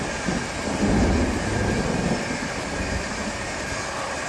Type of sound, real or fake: real